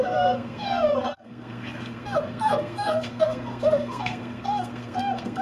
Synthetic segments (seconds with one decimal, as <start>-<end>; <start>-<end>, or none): 0.0-5.4